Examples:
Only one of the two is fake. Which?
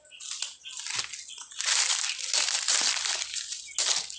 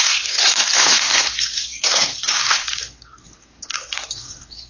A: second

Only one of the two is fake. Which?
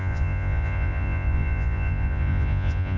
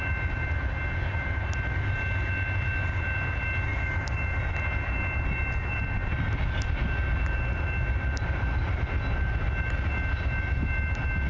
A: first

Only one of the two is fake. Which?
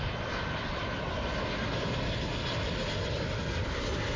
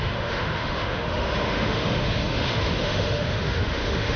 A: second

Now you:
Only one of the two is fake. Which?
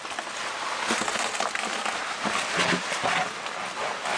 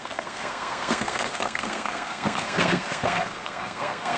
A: second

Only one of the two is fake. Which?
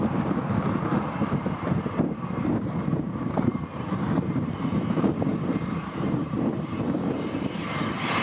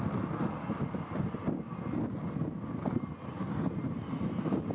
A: first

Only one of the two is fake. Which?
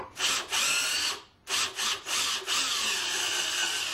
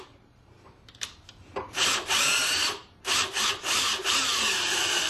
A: second